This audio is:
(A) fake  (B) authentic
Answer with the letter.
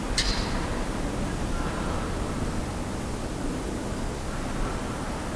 B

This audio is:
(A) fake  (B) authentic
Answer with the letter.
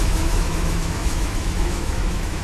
A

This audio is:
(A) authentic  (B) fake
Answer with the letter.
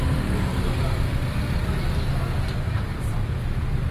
A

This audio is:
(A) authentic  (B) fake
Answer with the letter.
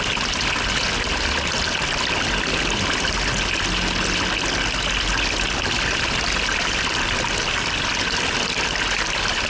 A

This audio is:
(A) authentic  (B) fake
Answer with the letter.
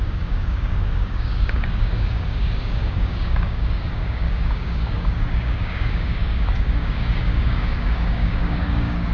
B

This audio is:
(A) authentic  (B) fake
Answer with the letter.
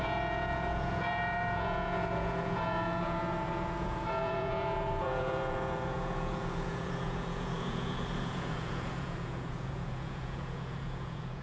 B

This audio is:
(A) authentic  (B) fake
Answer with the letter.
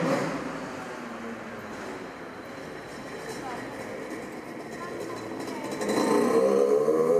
A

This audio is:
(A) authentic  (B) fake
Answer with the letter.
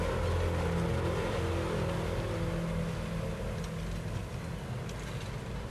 A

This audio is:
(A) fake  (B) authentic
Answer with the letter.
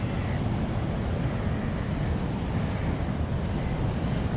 B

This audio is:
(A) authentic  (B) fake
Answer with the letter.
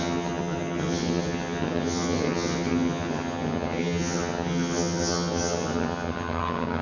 B